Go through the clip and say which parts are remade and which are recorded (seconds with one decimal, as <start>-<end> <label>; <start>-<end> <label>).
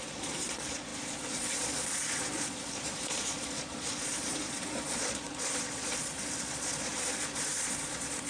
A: 0.0-8.3 remade